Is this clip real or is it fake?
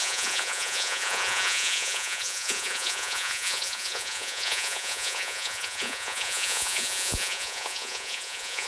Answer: fake